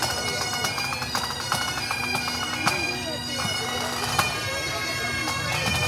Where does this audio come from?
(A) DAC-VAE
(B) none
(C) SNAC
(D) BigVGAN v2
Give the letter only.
B